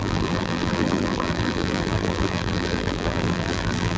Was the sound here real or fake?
fake